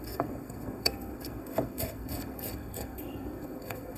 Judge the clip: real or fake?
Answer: fake